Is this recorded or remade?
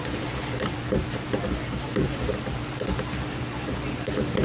recorded